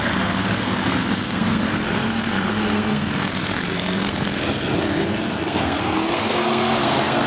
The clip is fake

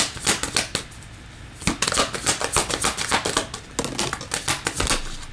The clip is real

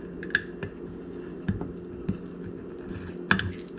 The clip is real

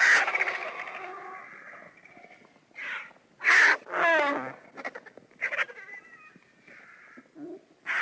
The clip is real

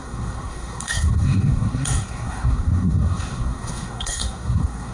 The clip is fake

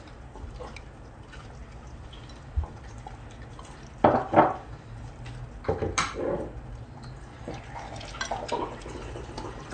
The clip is real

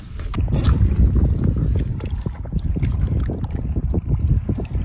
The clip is real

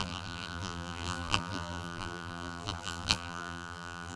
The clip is fake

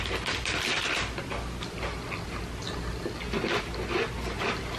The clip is real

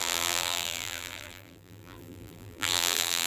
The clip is fake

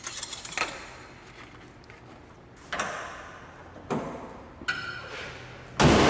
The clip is real